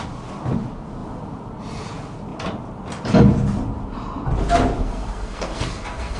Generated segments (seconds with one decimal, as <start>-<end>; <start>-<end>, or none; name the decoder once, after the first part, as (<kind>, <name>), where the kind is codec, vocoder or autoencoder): 4.8-6.2 (codec, SNAC)